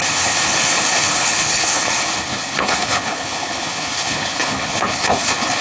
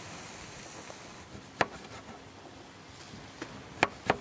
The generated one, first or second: first